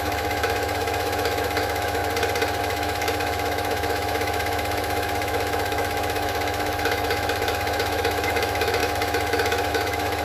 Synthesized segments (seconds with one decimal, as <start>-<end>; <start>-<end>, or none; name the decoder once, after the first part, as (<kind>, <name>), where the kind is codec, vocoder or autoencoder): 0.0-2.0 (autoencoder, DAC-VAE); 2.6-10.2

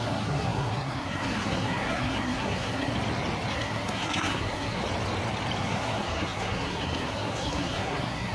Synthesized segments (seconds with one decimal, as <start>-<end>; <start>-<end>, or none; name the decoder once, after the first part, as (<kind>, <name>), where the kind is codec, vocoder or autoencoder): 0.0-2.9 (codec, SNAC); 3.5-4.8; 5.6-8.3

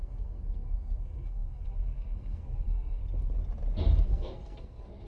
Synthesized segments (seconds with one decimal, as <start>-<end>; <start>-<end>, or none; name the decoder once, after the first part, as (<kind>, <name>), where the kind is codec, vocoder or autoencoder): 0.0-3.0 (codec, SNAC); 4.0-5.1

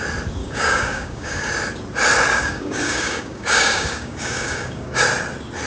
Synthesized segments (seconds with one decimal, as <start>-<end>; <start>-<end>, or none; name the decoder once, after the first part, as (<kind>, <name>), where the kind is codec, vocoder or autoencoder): 0.4-1.5 (codec, DAC); 2.3-5.0

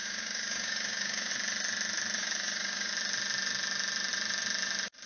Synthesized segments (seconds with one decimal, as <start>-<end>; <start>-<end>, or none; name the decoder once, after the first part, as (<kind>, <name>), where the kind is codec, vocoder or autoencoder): 0.0-1.3 (codec, DAC); 2.2-2.9

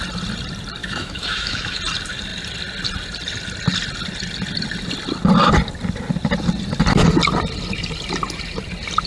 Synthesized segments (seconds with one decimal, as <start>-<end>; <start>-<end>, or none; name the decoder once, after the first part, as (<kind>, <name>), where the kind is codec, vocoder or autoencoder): 0.8-1.8 (autoencoder, DAC-VAE)